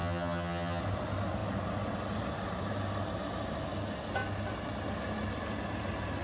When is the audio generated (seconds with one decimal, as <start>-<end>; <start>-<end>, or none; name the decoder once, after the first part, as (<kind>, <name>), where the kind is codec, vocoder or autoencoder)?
0.0-0.8 (vocoder, HiFi-GAN)